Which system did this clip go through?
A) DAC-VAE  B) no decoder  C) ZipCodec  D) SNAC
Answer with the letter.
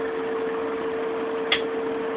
B